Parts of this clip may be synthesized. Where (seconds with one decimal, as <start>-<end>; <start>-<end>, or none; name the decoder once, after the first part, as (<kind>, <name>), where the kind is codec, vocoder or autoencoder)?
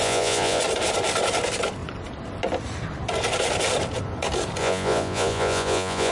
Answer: 0.0-0.6 (vocoder, Vocos); 4.6-6.1